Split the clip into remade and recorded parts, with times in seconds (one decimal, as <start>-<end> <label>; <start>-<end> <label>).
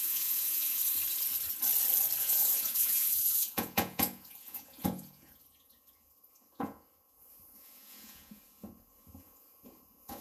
0.0-0.8 remade; 0.8-2.2 recorded; 2.2-10.2 remade